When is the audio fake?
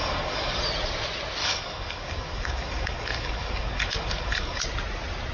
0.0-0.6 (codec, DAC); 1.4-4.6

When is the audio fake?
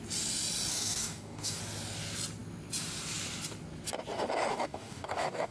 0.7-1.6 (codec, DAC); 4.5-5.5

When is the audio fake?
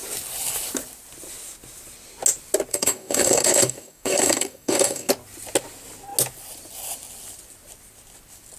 2.7-5.1 (codec, DAC)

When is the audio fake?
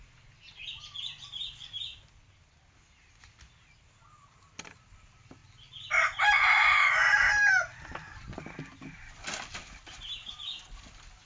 none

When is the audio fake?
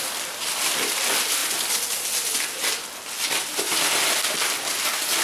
none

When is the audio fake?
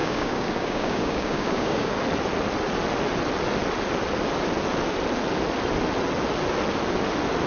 0.0-1.9 (codec, DAC)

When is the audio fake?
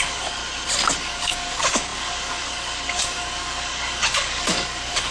0.0-0.4 (codec, DAC); 1.0-5.1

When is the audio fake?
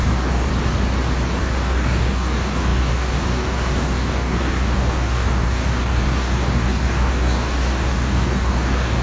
0.0-0.5 (codec, DAC); 1.4-9.0